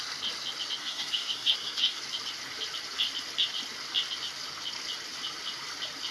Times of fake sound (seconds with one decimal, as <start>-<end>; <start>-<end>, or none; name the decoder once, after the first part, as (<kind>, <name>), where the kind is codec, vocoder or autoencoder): 0.8-2.0 (codec, SNAC)